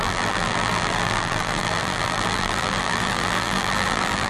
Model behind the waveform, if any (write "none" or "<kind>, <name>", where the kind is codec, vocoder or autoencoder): vocoder, BigVGAN v2